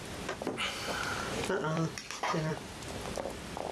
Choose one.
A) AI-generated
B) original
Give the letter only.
A